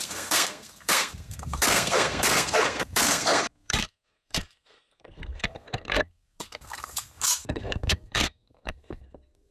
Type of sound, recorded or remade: remade